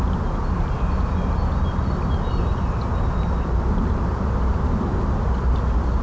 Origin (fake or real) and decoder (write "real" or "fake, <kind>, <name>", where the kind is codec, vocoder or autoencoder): real